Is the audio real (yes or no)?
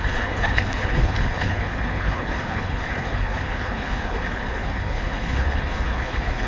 no